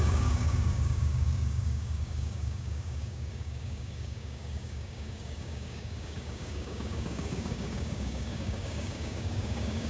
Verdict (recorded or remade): remade